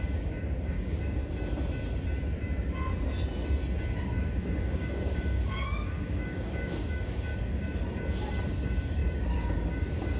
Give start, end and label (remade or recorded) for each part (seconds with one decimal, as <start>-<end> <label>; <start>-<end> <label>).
0.0-1.2 remade; 1.2-4.0 recorded; 4.0-7.3 remade; 7.3-8.4 recorded; 8.4-10.2 remade